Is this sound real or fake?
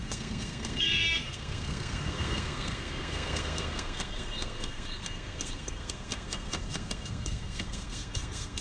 fake